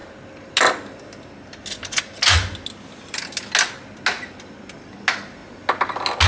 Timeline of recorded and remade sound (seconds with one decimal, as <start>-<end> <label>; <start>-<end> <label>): 0.0-6.3 recorded